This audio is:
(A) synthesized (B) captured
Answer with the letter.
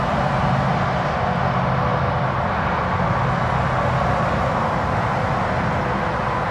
B